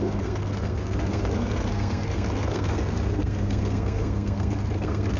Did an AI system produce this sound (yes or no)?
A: yes